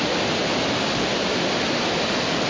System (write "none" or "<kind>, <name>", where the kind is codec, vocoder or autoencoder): none